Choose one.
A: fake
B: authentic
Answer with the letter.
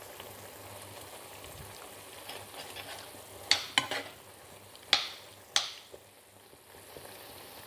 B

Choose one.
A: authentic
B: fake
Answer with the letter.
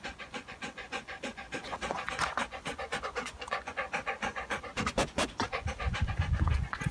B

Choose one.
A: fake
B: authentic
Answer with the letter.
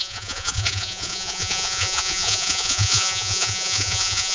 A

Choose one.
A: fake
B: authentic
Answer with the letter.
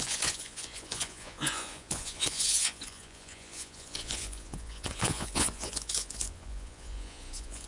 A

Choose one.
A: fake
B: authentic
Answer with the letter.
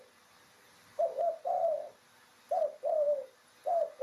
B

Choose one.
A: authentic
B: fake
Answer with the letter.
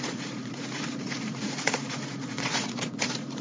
B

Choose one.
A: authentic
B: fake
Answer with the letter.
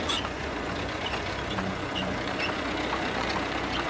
B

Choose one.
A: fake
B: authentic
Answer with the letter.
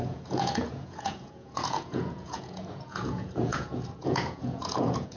A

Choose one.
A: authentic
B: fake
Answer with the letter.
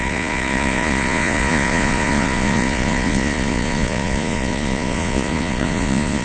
B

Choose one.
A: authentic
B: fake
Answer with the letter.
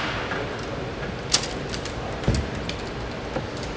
A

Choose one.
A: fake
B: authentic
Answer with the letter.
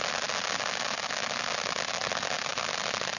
B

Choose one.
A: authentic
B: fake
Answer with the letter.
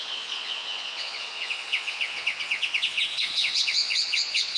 B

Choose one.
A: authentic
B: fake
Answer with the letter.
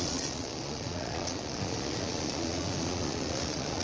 B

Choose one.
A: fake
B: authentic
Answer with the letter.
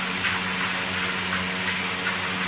B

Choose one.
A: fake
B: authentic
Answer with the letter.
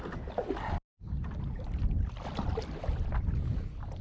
B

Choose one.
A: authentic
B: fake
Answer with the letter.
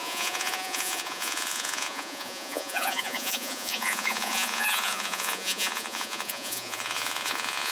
B